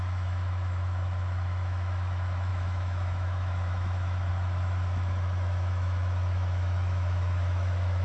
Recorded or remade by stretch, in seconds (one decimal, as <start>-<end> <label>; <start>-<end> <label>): 0.0-8.0 remade